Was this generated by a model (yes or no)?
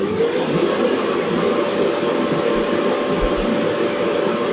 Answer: no